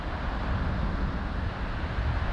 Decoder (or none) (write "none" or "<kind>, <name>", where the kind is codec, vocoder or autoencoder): none